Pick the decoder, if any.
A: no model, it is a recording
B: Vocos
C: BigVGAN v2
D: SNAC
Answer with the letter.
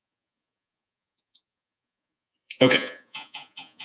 B